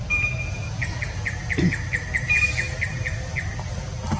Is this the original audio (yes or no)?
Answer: yes